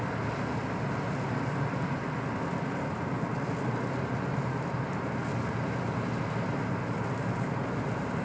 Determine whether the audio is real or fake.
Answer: real